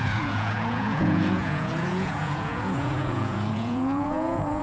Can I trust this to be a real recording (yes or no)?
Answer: no